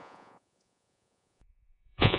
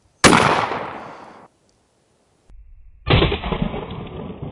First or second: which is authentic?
second